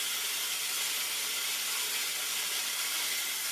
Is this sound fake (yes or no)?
no